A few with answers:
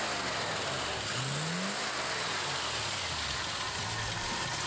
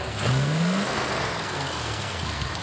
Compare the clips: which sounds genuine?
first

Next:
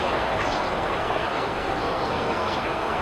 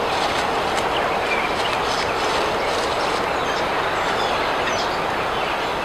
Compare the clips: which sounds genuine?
second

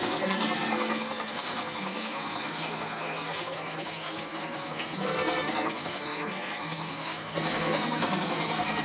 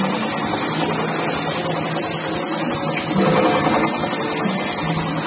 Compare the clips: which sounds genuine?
second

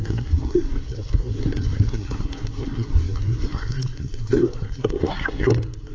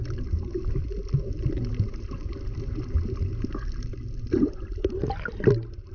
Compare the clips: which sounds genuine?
second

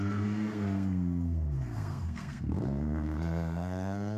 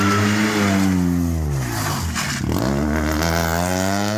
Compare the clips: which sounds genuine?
second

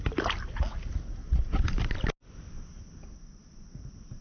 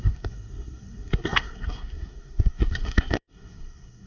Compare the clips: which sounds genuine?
first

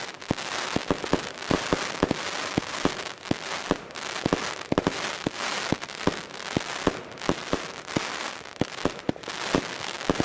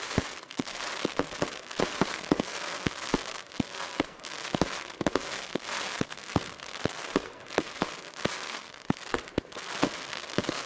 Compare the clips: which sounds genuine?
first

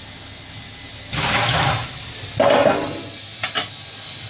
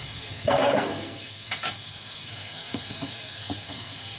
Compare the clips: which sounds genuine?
first